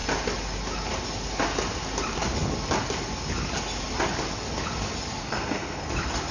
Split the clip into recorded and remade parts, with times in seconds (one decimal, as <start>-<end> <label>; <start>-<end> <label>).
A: 0.0-5.2 recorded; 5.2-5.8 remade; 5.8-6.3 recorded

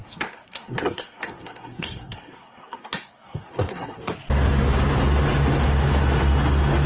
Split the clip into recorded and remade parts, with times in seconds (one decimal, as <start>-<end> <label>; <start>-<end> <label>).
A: 0.0-4.1 remade; 4.1-6.9 recorded

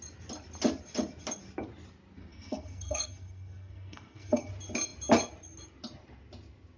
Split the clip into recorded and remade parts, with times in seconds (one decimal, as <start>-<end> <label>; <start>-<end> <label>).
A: 0.0-2.3 recorded; 2.3-4.5 remade; 4.5-6.8 recorded

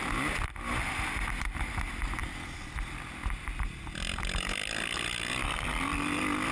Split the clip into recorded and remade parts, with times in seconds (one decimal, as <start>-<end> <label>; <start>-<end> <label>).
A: 0.0-6.5 recorded

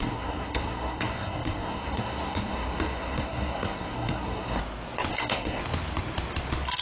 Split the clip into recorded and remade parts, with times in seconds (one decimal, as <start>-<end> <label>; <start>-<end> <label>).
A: 0.0-4.6 remade; 4.6-5.1 recorded; 5.1-5.6 remade; 5.6-6.8 recorded

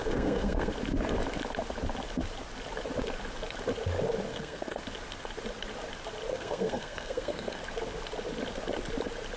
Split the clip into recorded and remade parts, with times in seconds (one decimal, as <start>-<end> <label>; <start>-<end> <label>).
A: 0.0-0.7 remade; 0.7-4.3 recorded; 4.3-4.8 remade; 4.8-6.3 recorded; 6.3-7.6 remade; 7.6-9.4 recorded